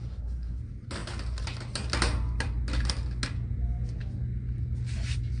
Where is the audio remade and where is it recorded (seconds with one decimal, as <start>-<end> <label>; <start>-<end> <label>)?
0.0-0.6 remade; 0.6-5.4 recorded